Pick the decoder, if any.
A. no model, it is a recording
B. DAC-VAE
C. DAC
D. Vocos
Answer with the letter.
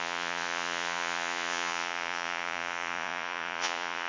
D